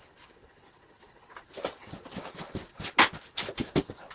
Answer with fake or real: real